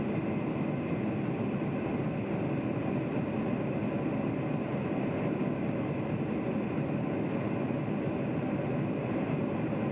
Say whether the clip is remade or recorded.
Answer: recorded